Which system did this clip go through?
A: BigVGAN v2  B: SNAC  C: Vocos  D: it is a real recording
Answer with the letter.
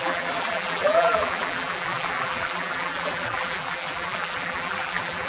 A